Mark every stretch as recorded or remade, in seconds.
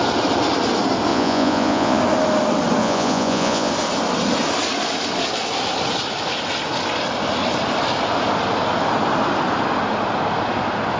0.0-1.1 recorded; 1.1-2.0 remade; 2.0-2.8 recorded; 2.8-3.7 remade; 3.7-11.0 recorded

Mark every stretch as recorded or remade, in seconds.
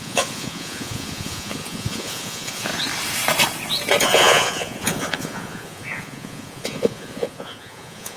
0.0-2.7 remade; 2.7-4.0 recorded; 4.0-8.2 remade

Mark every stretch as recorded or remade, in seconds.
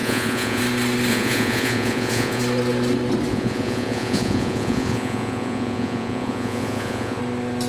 0.0-0.6 remade; 0.6-1.1 recorded; 1.1-2.4 remade; 2.4-3.3 recorded; 3.3-7.2 remade; 7.2-7.7 recorded